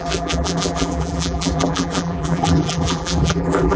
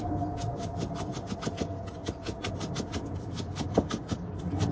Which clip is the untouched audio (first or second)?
second